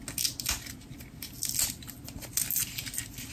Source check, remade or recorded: recorded